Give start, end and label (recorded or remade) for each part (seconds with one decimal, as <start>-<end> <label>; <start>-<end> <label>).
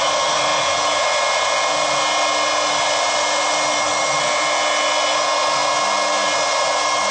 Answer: 0.0-7.1 recorded